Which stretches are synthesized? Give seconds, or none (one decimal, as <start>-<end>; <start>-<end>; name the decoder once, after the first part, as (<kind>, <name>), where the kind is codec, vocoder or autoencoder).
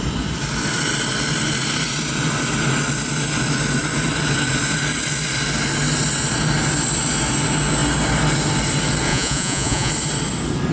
9.1-9.9 (vocoder, Vocos)